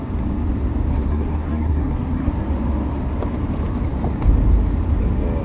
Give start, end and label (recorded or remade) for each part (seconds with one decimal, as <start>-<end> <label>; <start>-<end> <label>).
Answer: 0.0-0.9 recorded; 0.9-2.3 remade; 2.3-5.4 recorded